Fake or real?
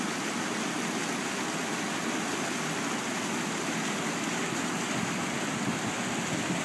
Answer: real